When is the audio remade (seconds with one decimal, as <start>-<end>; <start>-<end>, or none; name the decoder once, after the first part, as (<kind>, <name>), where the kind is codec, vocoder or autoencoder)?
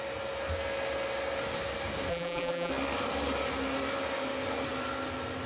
2.1-2.7 (vocoder, BigVGAN v2)